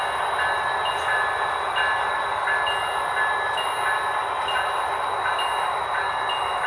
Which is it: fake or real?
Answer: real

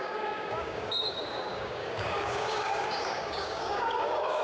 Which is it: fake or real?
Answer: fake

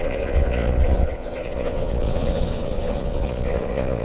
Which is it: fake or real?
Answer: fake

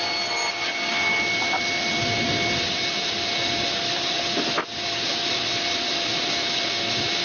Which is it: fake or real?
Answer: real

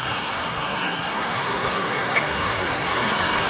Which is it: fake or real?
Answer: fake